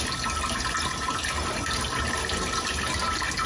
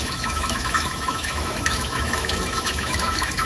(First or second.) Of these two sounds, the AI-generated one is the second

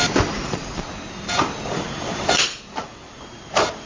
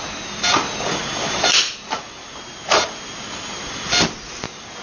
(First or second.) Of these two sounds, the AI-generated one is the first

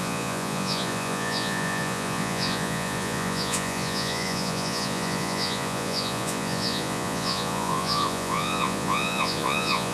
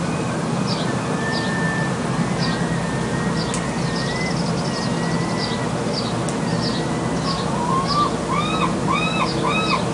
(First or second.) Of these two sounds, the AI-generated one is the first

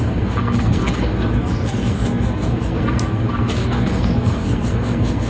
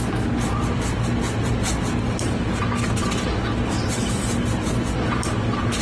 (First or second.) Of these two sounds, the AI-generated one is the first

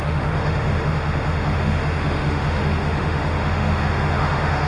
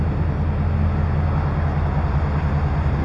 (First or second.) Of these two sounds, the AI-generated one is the first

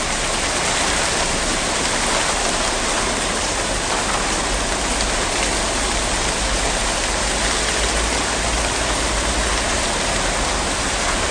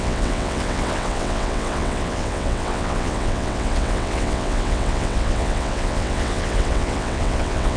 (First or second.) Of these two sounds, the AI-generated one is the second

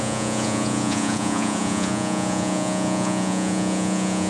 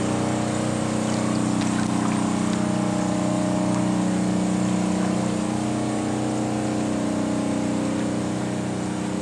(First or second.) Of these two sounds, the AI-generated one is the first